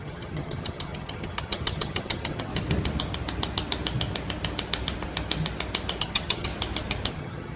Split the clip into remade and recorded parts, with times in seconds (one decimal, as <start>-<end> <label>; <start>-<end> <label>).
0.0-2.5 remade; 2.5-6.0 recorded; 6.0-6.5 remade; 6.5-7.1 recorded; 7.1-7.6 remade